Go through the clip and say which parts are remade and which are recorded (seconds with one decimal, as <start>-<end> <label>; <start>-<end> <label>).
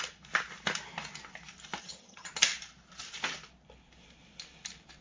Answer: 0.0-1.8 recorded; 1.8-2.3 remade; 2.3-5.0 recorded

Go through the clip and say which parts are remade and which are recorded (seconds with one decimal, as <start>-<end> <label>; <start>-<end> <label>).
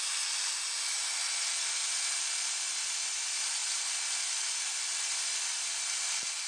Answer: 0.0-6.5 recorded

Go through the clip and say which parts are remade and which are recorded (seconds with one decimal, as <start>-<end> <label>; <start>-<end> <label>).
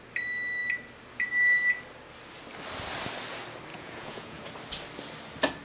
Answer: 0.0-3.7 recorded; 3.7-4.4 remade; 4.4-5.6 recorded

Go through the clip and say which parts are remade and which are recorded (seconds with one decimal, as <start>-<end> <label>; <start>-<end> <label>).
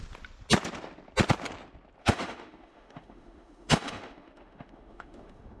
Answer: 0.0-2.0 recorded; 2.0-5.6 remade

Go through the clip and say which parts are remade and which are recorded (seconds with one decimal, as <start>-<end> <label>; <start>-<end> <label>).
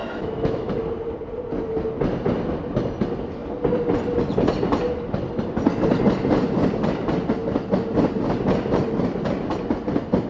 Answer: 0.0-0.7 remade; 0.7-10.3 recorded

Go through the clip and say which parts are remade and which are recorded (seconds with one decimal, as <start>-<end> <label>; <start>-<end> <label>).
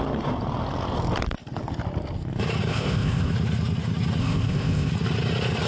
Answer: 0.0-2.7 recorded; 2.7-3.3 remade; 3.3-4.2 recorded; 4.2-4.9 remade; 4.9-5.7 recorded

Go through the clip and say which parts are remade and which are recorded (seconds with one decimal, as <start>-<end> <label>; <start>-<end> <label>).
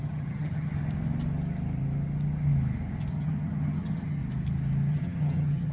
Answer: 0.0-0.7 remade; 0.7-3.1 recorded; 3.1-4.2 remade; 4.2-4.9 recorded; 4.9-5.7 remade